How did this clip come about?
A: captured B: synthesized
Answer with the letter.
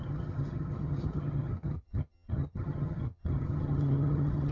B